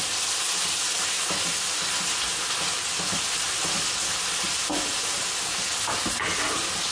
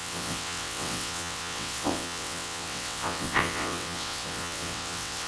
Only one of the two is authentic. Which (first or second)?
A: first